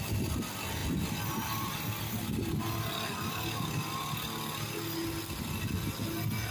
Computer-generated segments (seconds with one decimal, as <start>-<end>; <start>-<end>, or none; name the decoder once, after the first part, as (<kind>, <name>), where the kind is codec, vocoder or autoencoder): none